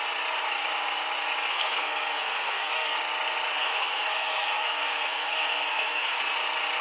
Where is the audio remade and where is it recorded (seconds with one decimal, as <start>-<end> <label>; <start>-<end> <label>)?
0.0-1.5 recorded; 1.5-3.0 remade; 3.0-3.6 recorded; 3.6-6.2 remade; 6.2-6.8 recorded